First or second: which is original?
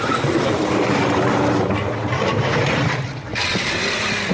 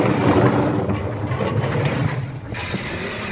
first